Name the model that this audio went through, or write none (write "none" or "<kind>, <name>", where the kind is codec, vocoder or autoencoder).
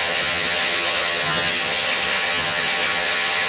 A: vocoder, HiFi-GAN